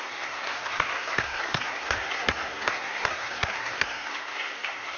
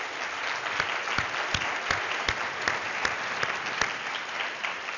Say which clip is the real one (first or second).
second